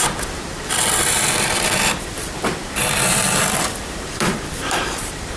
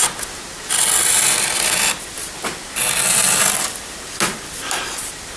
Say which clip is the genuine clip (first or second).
second